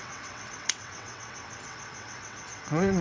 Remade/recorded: remade